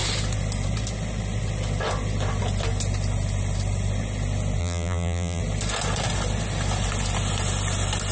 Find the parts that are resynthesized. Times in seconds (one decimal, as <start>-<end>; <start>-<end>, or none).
4.6-5.4